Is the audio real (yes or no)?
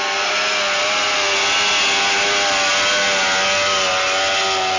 yes